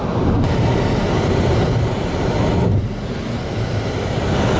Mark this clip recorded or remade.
recorded